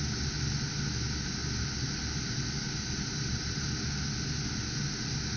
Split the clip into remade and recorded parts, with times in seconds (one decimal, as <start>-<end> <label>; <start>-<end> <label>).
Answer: 0.0-5.4 recorded